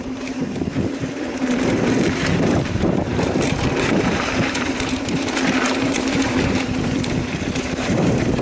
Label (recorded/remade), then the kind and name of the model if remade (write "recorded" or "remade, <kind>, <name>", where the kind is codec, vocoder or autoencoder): remade, vocoder, BigVGAN v2